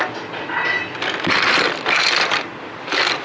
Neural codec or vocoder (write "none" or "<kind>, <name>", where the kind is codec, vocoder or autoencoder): none